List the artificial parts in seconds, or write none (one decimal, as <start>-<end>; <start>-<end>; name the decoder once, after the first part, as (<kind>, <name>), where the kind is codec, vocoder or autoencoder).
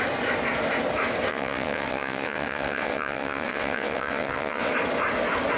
1.3-4.7 (vocoder, WaveNeXt)